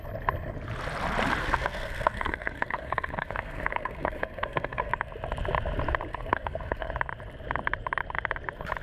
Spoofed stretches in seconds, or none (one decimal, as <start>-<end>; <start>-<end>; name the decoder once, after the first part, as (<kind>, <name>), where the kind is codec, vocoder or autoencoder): 1.4-4.9 (codec, SNAC); 6.1-6.9